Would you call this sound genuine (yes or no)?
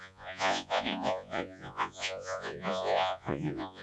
no